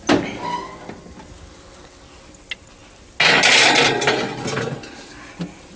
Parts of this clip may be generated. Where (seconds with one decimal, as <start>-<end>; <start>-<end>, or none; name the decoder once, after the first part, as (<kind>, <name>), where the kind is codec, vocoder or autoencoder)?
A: none

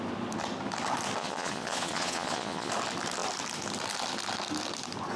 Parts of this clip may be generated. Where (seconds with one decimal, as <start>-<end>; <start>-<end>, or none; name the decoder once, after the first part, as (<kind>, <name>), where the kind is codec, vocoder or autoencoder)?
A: 1.2-2.7 (vocoder, Vocos)